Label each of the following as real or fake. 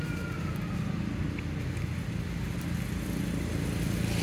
real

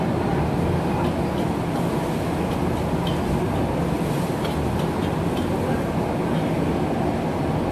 real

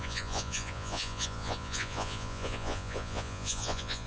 fake